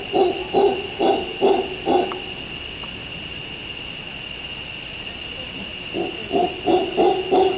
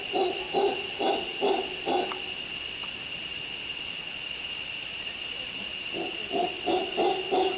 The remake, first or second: second